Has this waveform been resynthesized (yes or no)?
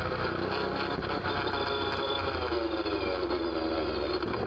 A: no